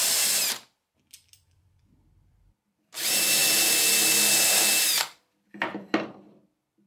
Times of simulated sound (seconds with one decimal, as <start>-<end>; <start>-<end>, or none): none

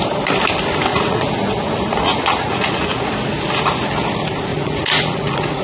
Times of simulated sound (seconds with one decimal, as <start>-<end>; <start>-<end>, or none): 0.9-3.1; 4.5-5.6

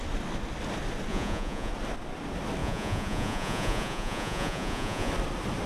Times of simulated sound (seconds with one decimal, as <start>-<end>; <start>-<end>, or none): 1.1-1.7; 2.6-5.1

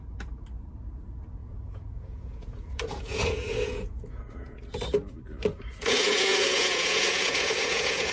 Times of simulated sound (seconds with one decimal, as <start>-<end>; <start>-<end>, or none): 1.4-4.8; 5.5-8.1

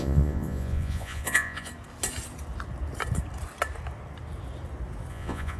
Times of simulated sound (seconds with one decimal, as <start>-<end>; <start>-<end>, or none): 0.0-1.7; 5.1-5.6

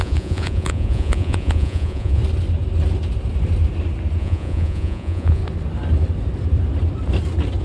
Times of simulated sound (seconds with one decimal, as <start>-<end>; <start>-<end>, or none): 0.0-2.2; 4.2-5.4